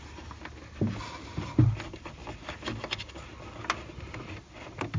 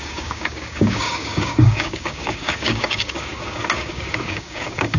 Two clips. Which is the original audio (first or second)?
first